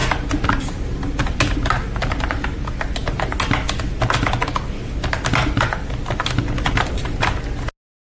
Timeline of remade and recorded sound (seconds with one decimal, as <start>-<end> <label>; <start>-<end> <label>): 0.0-8.2 recorded